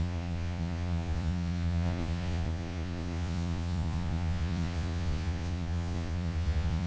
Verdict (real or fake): fake